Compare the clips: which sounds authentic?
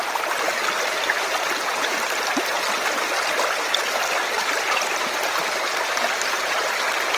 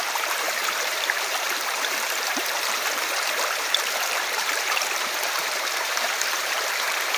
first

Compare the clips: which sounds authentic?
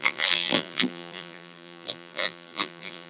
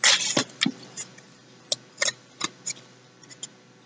second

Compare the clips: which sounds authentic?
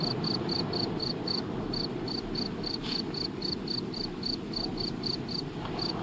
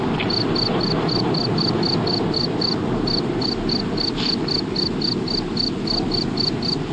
second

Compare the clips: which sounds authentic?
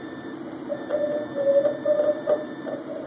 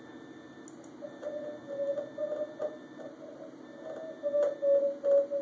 second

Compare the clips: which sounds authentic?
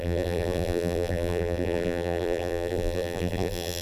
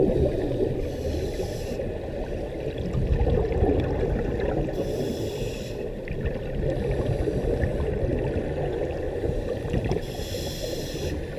second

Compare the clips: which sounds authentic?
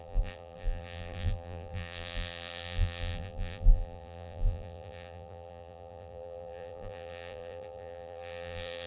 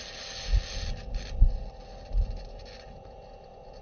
second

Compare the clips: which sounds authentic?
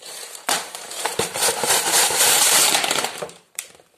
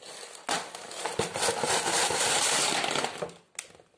second